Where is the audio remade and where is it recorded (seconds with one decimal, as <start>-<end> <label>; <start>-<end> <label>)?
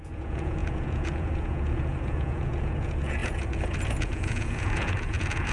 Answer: 0.0-5.5 remade